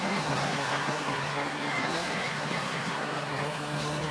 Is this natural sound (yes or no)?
no